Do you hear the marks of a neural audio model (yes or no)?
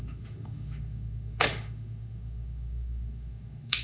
yes